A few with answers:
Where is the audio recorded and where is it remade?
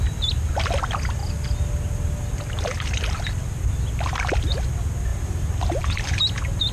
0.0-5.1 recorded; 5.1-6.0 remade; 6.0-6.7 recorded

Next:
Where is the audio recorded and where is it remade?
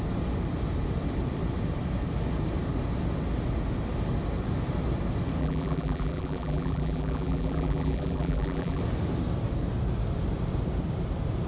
0.0-5.4 recorded; 5.4-8.8 remade; 8.8-11.5 recorded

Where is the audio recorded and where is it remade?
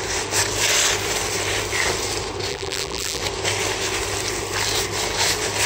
0.0-2.5 recorded; 2.5-3.2 remade; 3.2-5.7 recorded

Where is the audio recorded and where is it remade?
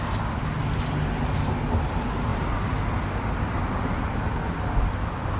0.0-2.3 recorded; 2.3-3.6 remade; 3.6-5.4 recorded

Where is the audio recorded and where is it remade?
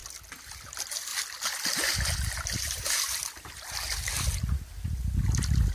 0.0-0.6 remade; 0.6-1.1 recorded; 1.1-4.4 remade; 4.4-5.7 recorded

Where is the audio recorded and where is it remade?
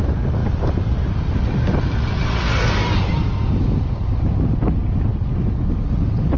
0.0-0.4 recorded; 0.4-3.5 remade; 3.5-6.4 recorded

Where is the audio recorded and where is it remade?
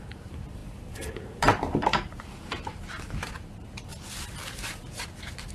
0.0-3.9 remade; 3.9-4.7 recorded; 4.7-5.5 remade